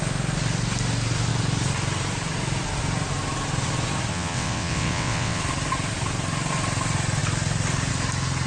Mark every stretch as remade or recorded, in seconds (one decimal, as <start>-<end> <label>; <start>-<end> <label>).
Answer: 0.0-4.1 recorded; 4.1-5.4 remade; 5.4-8.5 recorded